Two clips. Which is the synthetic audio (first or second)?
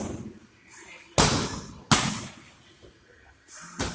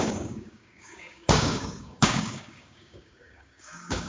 second